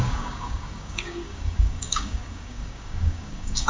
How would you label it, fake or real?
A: fake